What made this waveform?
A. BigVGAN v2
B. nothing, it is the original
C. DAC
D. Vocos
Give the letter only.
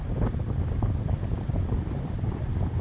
B